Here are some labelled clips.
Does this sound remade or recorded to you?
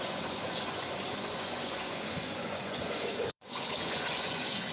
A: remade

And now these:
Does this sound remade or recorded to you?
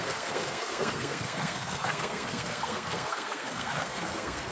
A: remade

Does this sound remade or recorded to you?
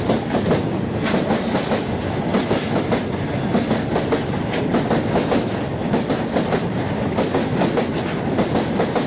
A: recorded